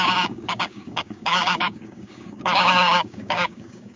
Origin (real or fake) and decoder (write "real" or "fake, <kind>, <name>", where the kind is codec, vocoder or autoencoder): fake, codec, DAC